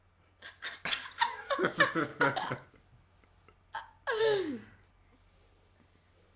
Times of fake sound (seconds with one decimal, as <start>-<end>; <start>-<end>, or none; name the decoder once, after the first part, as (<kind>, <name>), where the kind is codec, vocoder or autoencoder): none